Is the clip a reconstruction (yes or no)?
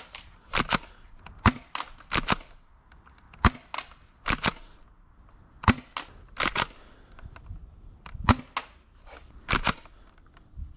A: no